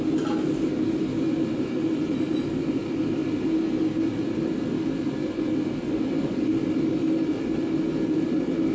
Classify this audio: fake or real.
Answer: real